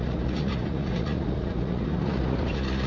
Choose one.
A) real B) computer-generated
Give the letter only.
B